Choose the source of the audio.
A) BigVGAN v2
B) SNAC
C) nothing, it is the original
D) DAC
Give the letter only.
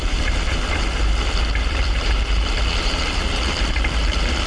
A